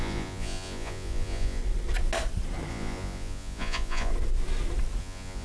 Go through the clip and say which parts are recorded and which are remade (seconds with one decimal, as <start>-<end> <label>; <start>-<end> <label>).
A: 0.0-1.6 remade; 1.6-2.7 recorded; 2.7-4.1 remade; 4.1-5.0 recorded; 5.0-5.4 remade